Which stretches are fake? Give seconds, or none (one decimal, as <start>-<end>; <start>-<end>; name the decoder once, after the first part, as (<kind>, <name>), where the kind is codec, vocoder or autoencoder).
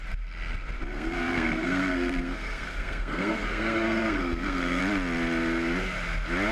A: 0.9-4.8 (codec, SNAC)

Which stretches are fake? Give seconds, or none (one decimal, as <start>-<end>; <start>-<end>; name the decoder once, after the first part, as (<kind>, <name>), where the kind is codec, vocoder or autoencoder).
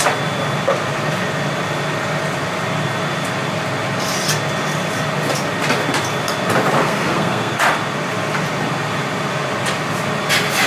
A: 6.8-7.6 (codec, SNAC)